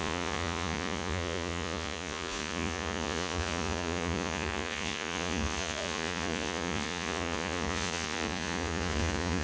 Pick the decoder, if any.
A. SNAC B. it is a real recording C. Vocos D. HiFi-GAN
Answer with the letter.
C